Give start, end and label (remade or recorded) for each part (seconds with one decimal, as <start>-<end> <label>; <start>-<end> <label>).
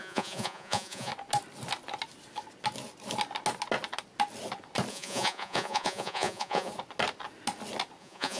0.0-1.1 remade; 1.1-4.9 recorded; 4.9-6.7 remade; 6.7-8.0 recorded; 8.0-8.4 remade